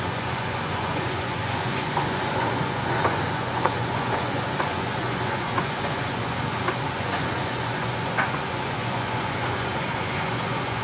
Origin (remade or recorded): remade